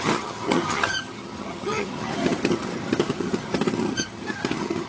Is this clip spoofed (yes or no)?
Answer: yes